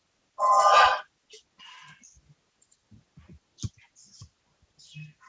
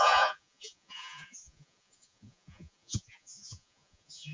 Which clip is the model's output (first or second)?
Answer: second